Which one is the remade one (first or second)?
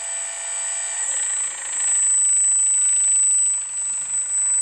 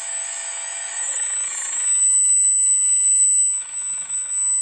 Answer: second